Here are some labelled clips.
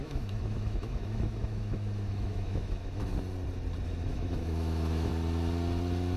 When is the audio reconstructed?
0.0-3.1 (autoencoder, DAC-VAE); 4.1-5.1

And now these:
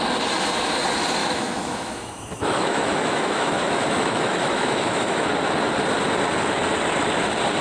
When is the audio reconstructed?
1.2-5.3 (autoencoder, DAC-VAE)

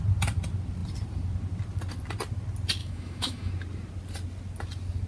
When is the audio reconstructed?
2.8-3.5 (autoencoder, DAC-VAE)

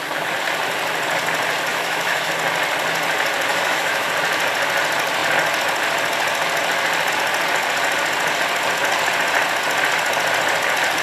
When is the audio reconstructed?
1.7-2.3 (autoencoder, DAC-VAE); 3.5-4.1